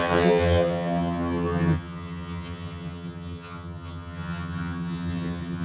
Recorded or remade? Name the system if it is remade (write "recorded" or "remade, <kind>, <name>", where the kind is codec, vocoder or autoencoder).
remade, vocoder, HiFi-GAN